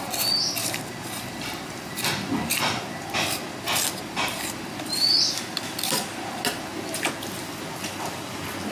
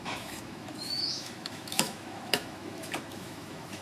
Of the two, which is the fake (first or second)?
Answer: second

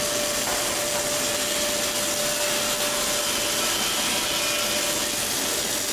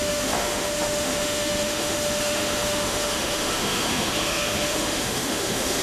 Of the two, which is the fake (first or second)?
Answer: second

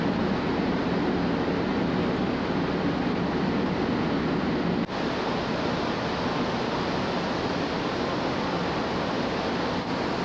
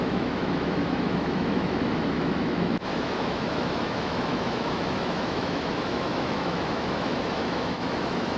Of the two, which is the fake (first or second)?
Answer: second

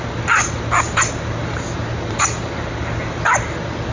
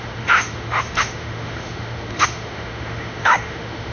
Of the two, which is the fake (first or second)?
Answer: second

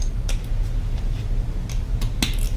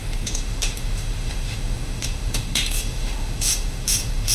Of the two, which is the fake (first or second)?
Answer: second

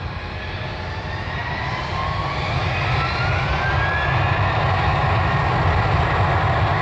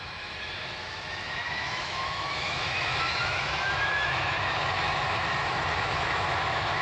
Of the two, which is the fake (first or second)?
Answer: second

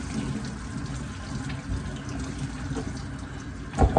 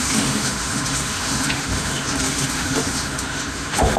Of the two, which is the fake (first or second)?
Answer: second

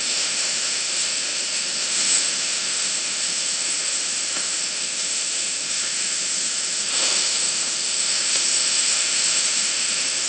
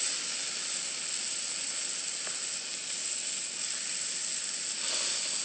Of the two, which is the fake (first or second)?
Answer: first